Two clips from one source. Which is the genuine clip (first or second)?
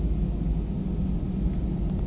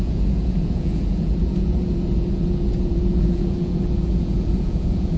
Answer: first